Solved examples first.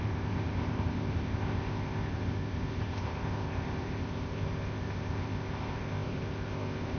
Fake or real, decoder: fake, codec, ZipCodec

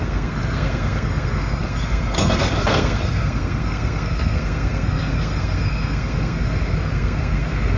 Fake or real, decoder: fake, codec, SNAC